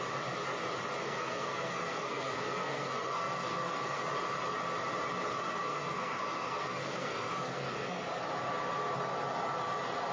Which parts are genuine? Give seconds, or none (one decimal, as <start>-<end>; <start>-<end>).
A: 0.0-1.0; 4.0-5.3; 8.0-10.1